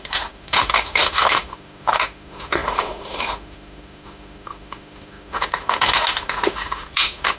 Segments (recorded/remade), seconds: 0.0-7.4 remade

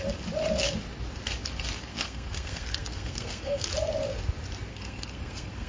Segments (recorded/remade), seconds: 0.0-1.9 recorded; 1.9-3.7 remade; 3.7-4.7 recorded; 4.7-5.7 remade

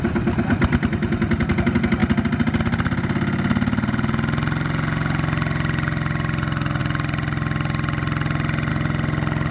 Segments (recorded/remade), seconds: 0.0-9.5 recorded